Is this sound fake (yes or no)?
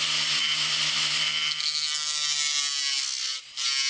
no